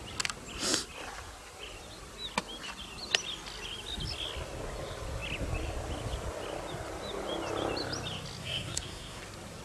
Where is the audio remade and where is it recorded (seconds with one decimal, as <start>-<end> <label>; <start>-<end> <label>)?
0.0-8.4 recorded; 8.4-9.2 remade; 9.2-9.6 recorded